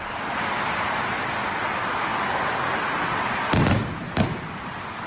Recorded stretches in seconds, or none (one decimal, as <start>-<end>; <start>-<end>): 0.0-5.1

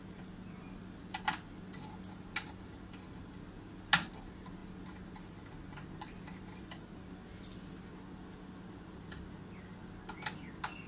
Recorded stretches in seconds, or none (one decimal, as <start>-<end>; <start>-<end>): 0.0-10.9

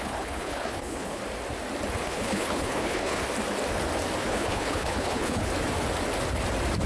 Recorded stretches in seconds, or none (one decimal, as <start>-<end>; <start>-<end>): 1.2-2.0; 3.2-4.2; 5.5-6.9

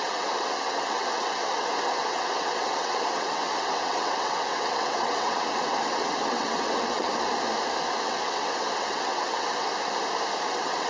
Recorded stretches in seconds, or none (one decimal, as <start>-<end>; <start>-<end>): 7.1-7.8; 9.7-10.4

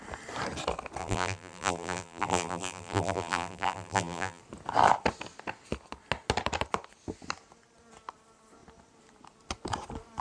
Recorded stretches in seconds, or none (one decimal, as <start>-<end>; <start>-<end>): 0.0-1.0; 4.4-10.2

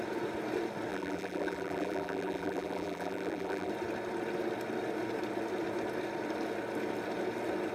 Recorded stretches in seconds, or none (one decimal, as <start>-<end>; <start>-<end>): 0.0-0.9; 3.7-7.7

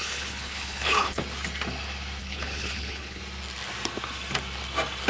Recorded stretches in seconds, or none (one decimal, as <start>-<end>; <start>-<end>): 1.2-2.2; 3.2-5.1